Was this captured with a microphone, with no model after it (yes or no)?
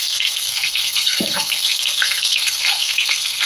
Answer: no